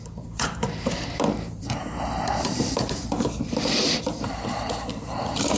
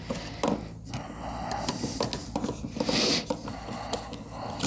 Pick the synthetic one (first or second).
first